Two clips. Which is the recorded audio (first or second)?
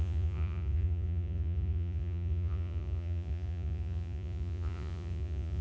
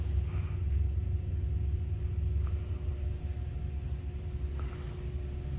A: second